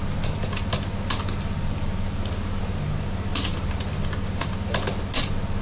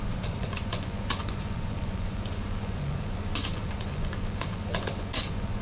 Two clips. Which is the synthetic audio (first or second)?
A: second